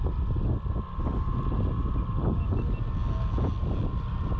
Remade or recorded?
recorded